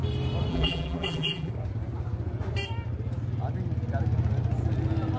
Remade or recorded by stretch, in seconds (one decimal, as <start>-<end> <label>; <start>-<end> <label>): 0.0-0.5 recorded; 0.5-1.5 remade; 1.5-5.2 recorded